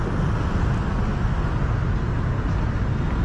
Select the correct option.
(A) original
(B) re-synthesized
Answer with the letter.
A